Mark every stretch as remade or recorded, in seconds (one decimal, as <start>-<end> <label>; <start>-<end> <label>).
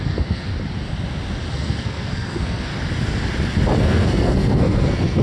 0.0-0.5 remade; 0.5-1.5 recorded; 1.5-2.7 remade; 2.7-3.8 recorded; 3.8-5.2 remade